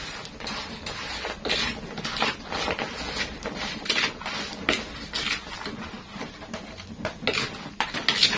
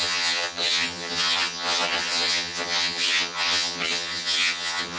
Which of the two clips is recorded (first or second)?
first